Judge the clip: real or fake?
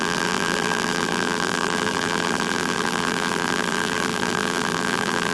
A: fake